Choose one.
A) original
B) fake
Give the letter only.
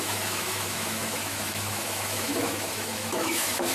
B